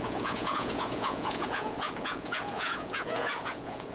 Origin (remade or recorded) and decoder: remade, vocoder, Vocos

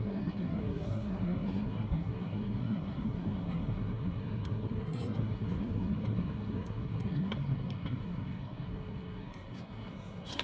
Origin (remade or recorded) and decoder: remade, codec, SNAC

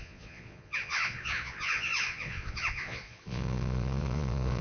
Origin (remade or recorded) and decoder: remade, vocoder, Vocos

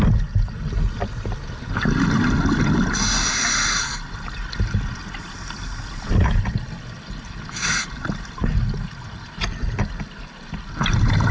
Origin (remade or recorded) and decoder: recorded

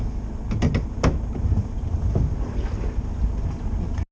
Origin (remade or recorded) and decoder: recorded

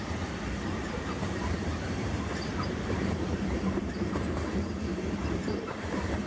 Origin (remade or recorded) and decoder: remade, vocoder, BigVGAN v2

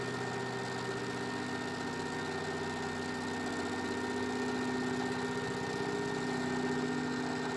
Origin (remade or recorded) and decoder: recorded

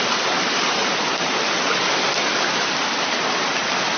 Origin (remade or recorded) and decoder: recorded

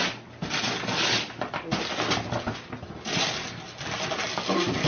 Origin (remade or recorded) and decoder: recorded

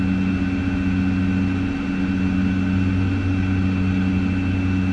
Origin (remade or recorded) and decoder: recorded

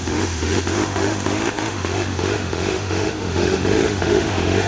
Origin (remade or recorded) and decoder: remade, autoencoder, DAC-VAE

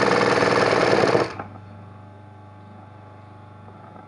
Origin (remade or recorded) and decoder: recorded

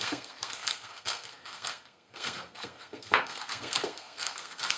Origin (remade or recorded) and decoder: remade, codec, SNAC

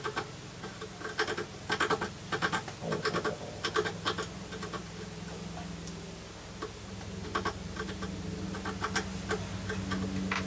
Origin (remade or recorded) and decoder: recorded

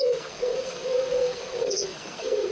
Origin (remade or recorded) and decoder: remade, codec, SNAC